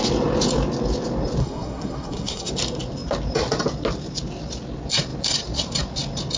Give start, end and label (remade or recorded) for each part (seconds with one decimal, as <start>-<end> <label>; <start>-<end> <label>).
0.0-1.4 recorded; 1.4-2.5 remade; 2.5-6.4 recorded